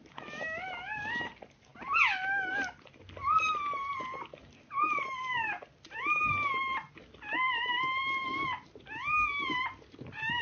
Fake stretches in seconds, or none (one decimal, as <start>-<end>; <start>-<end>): none